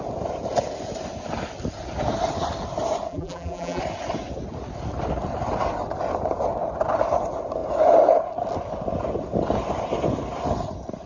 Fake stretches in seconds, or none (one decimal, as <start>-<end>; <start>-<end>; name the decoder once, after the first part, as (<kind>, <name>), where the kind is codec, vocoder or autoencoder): 3.1-3.8 (vocoder, BigVGAN v2)

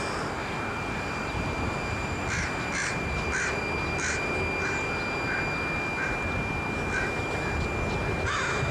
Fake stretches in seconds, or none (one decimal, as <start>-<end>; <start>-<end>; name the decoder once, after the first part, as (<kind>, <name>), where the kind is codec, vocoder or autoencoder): 0.7-4.4 (vocoder, BigVGAN v2)